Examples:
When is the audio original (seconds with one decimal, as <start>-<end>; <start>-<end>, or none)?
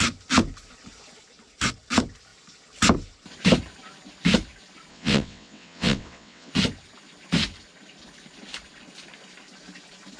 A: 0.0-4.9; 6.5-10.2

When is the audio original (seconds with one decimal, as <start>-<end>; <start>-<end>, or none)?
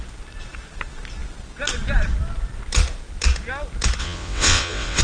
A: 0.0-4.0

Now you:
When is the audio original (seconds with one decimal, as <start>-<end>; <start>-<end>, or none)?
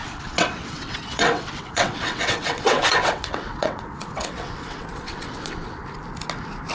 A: 5.8-6.7